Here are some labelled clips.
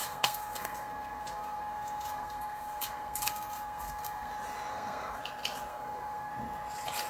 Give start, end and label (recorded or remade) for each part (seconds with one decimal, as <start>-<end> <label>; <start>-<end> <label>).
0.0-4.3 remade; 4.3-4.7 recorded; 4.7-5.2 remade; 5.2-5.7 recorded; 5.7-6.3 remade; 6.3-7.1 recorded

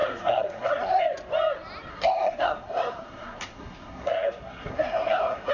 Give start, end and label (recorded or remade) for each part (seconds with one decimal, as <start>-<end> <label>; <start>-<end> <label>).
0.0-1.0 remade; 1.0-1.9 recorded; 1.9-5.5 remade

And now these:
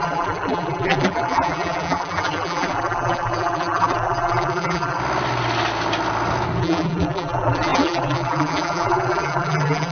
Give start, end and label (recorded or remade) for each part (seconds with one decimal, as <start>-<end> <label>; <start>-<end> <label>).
0.0-5.0 remade; 5.0-6.6 recorded; 6.6-9.9 remade

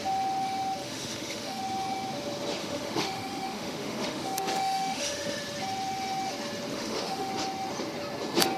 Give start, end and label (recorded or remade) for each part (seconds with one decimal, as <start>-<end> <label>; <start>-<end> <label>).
0.0-0.8 recorded; 0.8-1.6 remade; 1.6-2.6 recorded; 2.6-5.4 remade; 5.4-6.7 recorded; 6.7-7.3 remade; 7.3-8.6 recorded

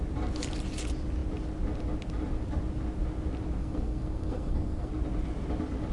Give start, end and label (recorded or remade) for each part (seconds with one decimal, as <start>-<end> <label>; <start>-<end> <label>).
0.0-3.6 recorded; 3.6-4.9 remade; 4.9-5.9 recorded

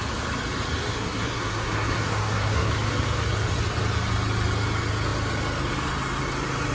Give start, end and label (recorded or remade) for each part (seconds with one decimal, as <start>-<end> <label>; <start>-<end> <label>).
0.0-0.9 recorded; 0.9-2.7 remade; 2.7-6.7 recorded

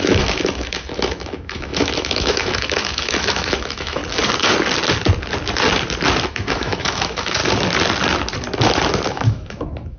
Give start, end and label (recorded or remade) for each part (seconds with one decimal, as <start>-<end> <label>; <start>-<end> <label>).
0.0-4.0 remade; 4.0-6.3 recorded; 6.3-7.4 remade; 7.4-9.1 recorded; 9.1-10.0 remade

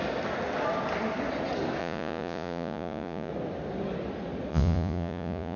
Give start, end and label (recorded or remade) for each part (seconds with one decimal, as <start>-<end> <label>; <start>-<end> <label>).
0.0-1.8 recorded; 1.8-3.3 remade; 3.3-4.5 recorded; 4.5-5.6 remade